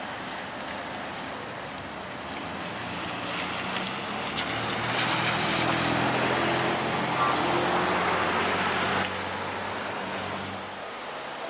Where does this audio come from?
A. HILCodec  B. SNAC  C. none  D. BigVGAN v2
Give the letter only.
C